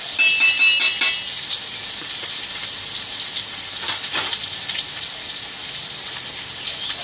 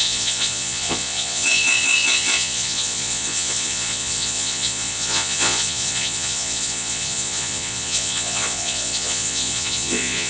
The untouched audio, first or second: first